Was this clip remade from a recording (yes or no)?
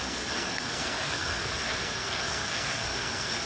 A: yes